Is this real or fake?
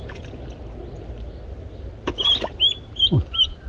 real